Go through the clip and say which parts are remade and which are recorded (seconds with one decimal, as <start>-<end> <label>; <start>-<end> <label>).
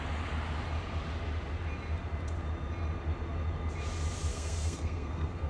0.0-4.3 recorded; 4.3-5.5 remade